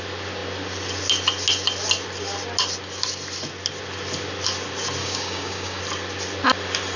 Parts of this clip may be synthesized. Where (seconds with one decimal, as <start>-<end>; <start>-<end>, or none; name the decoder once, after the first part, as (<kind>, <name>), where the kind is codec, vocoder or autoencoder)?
5.0-5.8 (codec, DAC)